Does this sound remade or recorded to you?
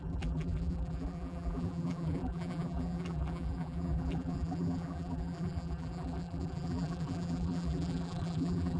remade